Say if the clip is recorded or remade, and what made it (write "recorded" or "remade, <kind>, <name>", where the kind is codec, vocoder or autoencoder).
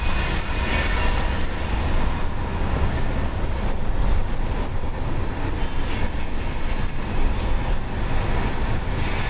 recorded